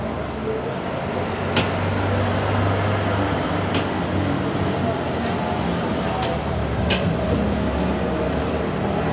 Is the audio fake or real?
real